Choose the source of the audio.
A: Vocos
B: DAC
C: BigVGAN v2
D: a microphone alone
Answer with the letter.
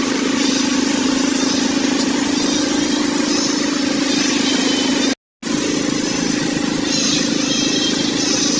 D